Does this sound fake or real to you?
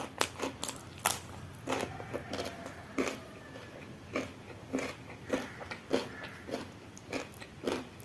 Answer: real